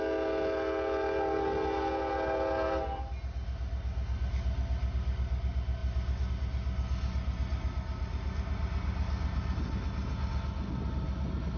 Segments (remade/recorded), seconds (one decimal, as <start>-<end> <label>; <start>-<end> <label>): 0.0-11.6 recorded